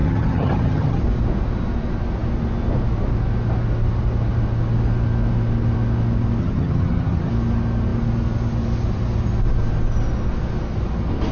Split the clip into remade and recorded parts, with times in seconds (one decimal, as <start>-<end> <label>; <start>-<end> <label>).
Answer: 0.0-1.0 remade; 1.0-6.4 recorded; 6.4-7.3 remade; 7.3-11.3 recorded